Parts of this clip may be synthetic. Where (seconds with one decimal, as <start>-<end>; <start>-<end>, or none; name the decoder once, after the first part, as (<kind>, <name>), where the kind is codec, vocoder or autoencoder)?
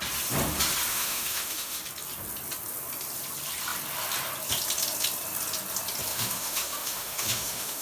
0.9-1.8 (autoencoder, DAC-VAE); 6.1-7.8